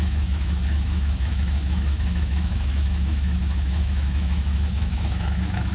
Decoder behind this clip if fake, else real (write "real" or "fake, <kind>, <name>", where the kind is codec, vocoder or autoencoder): fake, autoencoder, DAC-VAE